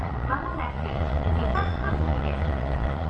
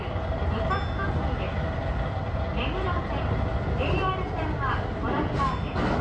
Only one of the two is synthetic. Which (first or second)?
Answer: first